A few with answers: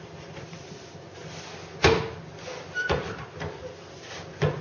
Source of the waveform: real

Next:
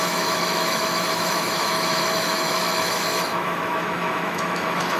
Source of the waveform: fake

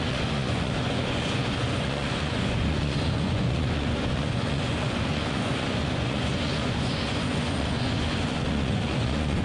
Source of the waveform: fake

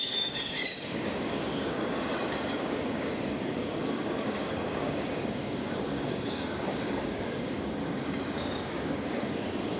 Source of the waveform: fake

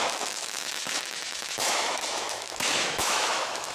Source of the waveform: fake